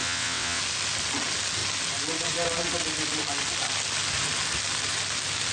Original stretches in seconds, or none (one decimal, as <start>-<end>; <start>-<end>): 0.6-5.5